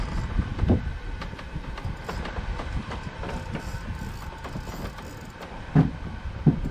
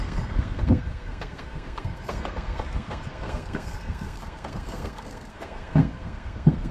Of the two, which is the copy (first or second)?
second